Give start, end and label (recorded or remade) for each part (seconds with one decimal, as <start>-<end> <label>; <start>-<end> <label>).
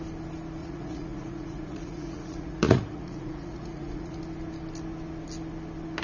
0.0-0.6 recorded; 0.6-4.2 remade; 4.2-6.0 recorded